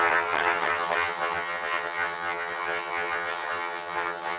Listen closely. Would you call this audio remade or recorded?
remade